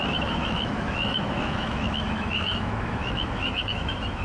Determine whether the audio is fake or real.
fake